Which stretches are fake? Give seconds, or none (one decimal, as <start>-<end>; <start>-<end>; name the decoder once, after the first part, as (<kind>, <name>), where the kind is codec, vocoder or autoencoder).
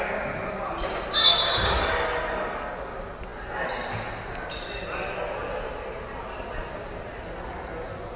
1.3-1.8 (codec, DAC)